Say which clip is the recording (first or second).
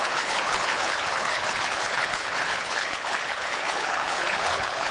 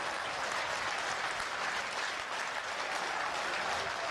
second